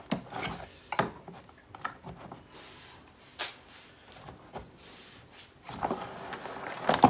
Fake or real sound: real